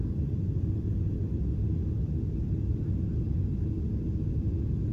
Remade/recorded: recorded